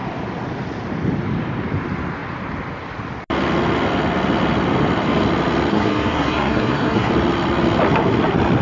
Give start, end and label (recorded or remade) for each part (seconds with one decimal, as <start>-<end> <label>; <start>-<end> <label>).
0.0-5.7 recorded; 5.7-7.1 remade; 7.1-8.6 recorded